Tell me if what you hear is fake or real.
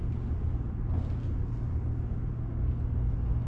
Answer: real